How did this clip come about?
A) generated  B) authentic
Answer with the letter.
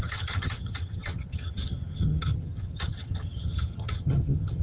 A